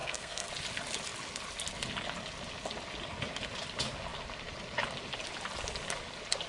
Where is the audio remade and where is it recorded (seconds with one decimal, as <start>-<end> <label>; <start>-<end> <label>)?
0.0-0.5 remade; 0.5-6.5 recorded